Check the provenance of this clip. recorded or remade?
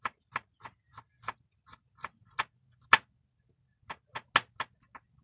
recorded